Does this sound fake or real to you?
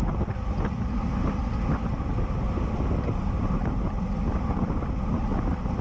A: real